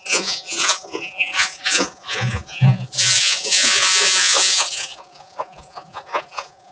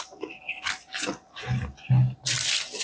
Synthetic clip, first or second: first